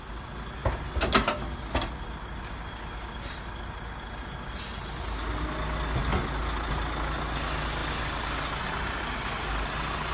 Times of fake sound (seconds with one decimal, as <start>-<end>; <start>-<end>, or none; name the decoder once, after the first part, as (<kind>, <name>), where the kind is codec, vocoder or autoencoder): none